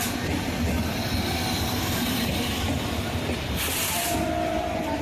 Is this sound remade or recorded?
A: remade